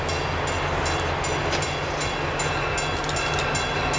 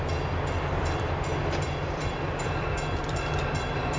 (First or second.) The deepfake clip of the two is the second